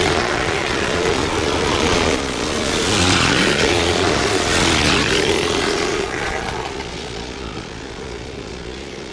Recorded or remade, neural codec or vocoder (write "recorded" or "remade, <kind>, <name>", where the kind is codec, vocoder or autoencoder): remade, vocoder, Vocos